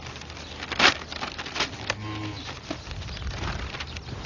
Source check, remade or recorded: recorded